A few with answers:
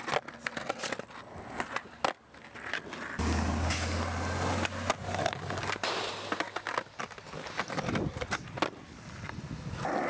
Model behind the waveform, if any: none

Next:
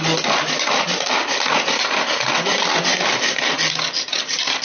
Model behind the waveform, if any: none